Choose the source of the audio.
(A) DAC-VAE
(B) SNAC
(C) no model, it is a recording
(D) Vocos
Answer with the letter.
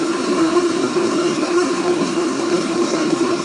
B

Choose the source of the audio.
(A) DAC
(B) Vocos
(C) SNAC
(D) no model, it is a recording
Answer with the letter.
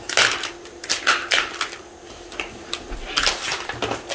D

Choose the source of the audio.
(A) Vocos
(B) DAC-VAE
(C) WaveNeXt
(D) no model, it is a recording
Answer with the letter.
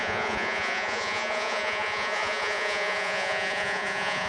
A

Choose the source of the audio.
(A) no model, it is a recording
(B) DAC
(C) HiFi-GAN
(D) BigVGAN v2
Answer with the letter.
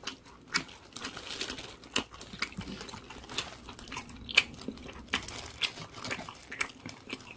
A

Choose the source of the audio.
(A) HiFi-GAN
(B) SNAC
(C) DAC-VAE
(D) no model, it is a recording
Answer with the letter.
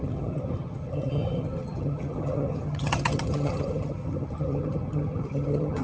A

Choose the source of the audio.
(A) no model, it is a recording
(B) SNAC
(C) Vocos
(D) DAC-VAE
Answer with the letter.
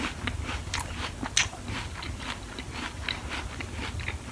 A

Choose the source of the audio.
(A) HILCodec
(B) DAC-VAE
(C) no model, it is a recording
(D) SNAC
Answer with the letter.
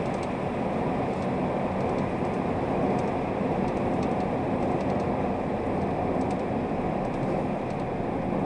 C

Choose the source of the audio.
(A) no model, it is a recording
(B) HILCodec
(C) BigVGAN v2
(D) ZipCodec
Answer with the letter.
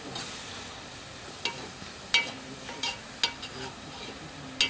A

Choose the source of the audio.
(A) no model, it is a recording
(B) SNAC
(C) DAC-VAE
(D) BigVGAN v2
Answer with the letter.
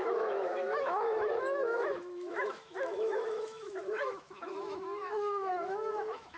C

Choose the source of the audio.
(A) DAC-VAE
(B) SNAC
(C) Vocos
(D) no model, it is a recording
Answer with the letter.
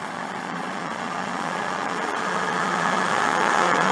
C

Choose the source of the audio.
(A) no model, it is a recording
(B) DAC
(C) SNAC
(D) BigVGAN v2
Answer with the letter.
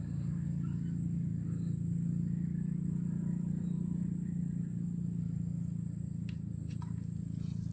A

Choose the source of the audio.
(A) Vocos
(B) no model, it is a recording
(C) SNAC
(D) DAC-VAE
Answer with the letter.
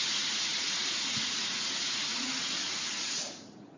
A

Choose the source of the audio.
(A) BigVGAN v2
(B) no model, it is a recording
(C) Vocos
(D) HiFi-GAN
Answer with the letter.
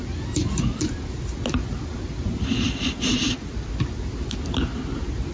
B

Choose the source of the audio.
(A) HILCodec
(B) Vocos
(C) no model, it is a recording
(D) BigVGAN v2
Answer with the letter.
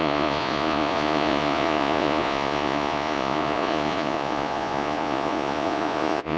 B